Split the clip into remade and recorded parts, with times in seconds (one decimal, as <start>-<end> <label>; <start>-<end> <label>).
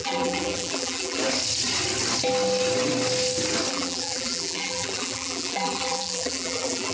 0.0-1.2 remade; 1.2-3.7 recorded; 3.7-6.9 remade